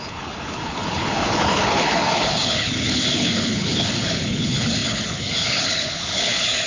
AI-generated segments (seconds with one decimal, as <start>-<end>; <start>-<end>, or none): 0.0-6.7